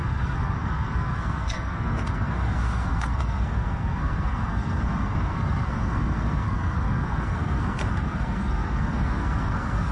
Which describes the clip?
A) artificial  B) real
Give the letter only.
A